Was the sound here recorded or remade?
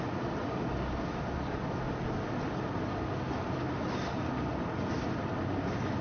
recorded